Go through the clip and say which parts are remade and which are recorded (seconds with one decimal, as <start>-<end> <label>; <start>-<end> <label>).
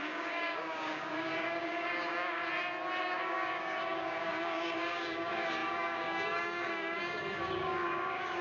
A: 0.0-2.4 remade; 2.4-3.0 recorded; 3.0-8.4 remade